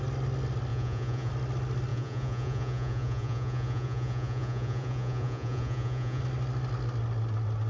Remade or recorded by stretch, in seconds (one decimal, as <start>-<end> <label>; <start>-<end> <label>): 0.0-0.7 recorded; 0.7-1.3 remade; 1.3-1.9 recorded; 1.9-6.2 remade; 6.2-7.7 recorded

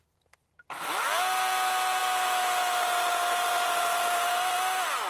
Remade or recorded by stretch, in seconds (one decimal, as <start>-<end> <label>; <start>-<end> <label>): 0.0-5.1 recorded

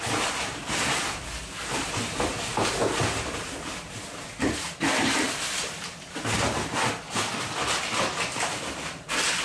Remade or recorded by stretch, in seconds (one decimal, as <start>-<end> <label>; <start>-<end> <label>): 0.0-9.4 recorded

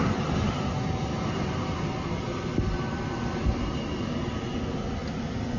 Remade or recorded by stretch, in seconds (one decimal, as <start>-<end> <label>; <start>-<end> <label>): 0.0-5.6 recorded

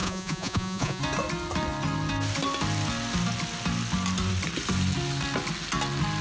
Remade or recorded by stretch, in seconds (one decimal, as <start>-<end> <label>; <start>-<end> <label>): 0.0-1.0 remade; 1.0-6.2 recorded

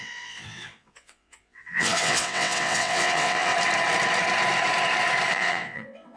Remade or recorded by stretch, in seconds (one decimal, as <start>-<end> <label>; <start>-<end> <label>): 0.0-3.5 remade; 3.5-5.3 recorded; 5.3-6.2 remade

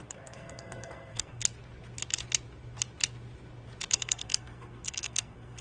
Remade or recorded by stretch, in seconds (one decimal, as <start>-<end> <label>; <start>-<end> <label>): 0.0-1.4 remade; 1.4-3.9 recorded; 3.9-5.6 remade